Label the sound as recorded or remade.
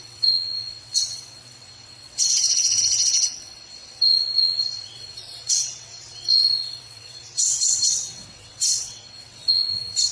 remade